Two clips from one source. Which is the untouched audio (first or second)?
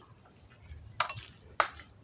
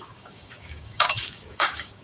first